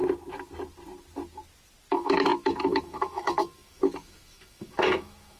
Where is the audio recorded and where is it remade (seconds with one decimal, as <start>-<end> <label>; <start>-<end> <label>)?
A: 0.0-1.9 recorded; 1.9-5.4 remade